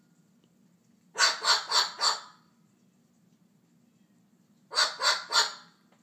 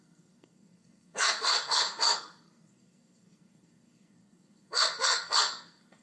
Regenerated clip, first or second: second